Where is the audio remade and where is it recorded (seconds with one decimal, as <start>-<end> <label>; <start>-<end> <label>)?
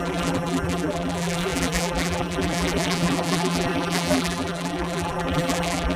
0.0-6.0 remade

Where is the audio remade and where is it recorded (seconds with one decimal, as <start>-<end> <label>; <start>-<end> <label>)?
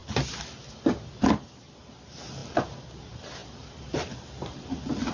0.0-3.4 recorded; 3.4-4.6 remade; 4.6-5.1 recorded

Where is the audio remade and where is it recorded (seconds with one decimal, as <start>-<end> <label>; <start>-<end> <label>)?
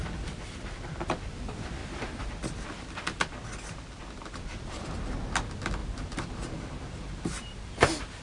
0.0-1.8 recorded; 1.8-2.3 remade; 2.3-5.8 recorded; 5.8-8.2 remade